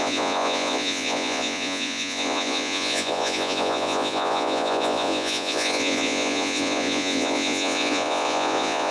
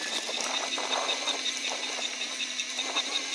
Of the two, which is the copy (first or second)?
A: first